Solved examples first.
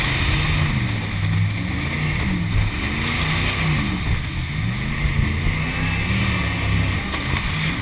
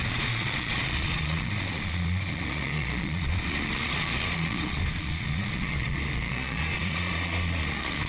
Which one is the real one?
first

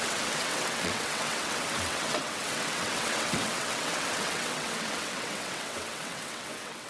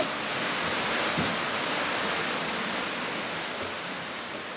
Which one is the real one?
second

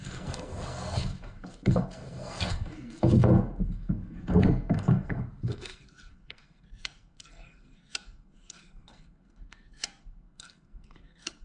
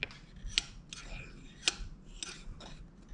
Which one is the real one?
second